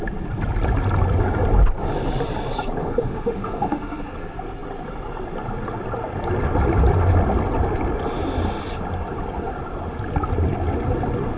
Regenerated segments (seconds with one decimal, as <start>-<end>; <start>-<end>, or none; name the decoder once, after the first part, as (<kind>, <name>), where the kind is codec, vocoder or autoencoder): 2.8-4.0 (autoencoder, DAC-VAE)